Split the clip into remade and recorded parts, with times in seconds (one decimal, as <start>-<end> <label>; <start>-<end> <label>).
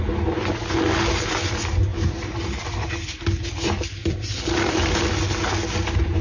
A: 0.0-4.0 recorded; 4.0-4.8 remade; 4.8-6.2 recorded